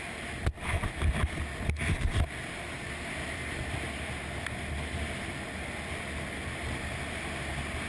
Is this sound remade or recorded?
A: recorded